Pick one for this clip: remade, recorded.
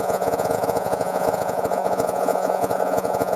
remade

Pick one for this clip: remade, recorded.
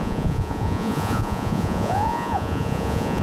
remade